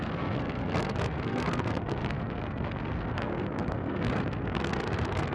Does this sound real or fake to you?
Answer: fake